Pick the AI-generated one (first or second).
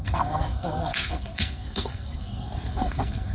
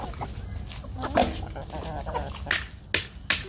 first